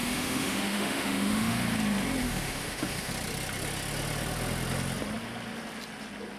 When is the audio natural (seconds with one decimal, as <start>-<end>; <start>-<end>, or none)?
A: 1.6-2.2; 3.1-6.4